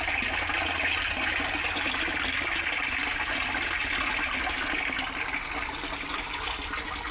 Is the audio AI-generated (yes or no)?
no